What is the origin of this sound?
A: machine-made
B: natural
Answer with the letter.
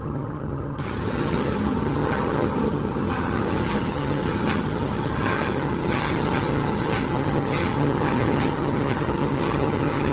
A